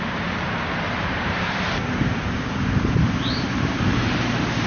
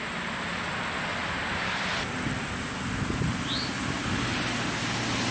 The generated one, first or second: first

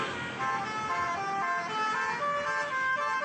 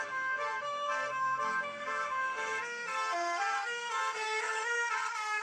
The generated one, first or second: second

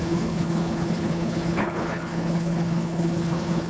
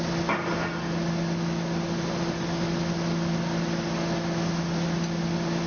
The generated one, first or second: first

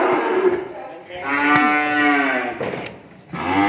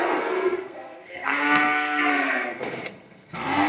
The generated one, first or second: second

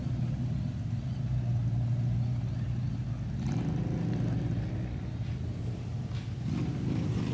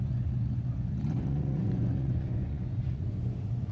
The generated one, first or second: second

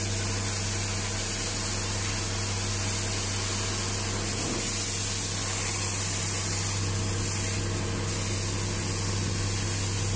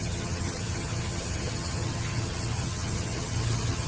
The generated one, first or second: second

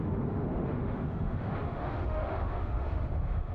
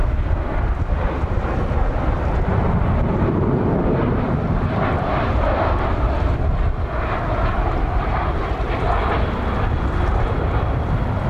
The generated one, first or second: first